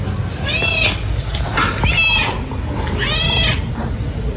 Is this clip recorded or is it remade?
recorded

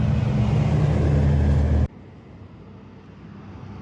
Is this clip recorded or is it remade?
recorded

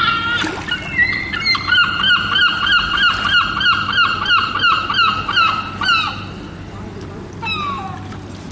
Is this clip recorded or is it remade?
recorded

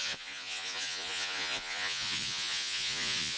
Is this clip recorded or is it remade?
remade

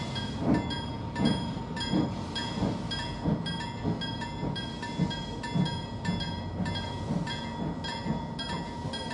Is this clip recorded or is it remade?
recorded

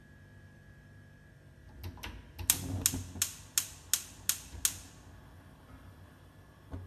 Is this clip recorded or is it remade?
recorded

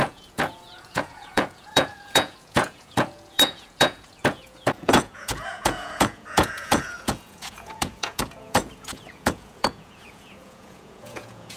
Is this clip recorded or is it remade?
remade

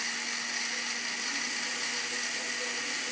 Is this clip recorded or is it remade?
recorded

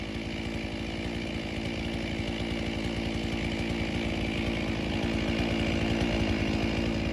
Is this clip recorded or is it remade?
recorded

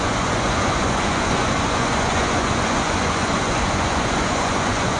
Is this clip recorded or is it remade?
remade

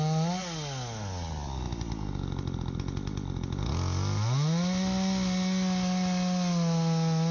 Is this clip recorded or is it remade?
recorded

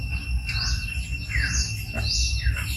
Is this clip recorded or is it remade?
recorded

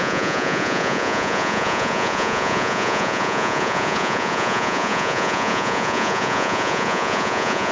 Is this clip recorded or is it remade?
remade